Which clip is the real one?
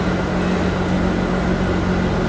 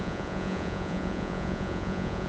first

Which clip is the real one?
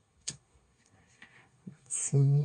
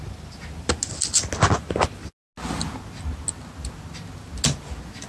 second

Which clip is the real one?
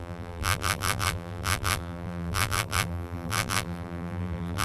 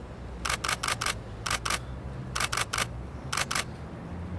second